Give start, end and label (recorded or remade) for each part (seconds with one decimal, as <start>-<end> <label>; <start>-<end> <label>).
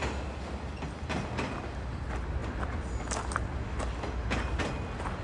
0.0-5.2 recorded